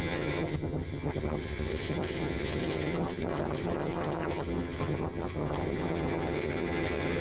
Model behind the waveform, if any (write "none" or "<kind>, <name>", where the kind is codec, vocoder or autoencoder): vocoder, HiFi-GAN